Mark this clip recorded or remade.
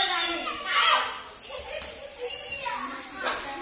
recorded